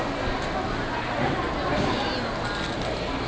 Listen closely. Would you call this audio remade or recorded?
recorded